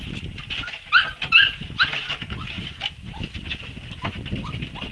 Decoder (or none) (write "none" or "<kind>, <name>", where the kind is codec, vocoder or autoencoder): none